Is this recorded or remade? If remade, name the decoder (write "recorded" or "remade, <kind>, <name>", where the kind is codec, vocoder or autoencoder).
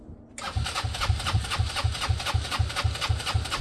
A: recorded